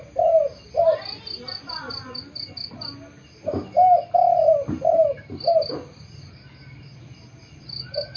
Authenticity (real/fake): real